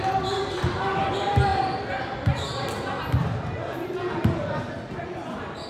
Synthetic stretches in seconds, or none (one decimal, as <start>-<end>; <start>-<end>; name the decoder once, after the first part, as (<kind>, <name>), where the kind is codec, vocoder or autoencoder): none